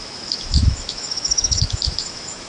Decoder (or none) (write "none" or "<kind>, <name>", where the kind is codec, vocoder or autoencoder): autoencoder, DAC-VAE